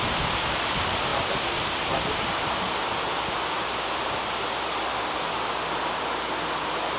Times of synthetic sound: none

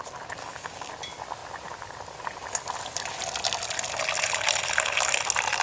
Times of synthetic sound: 0.4-0.9 (codec, DAC)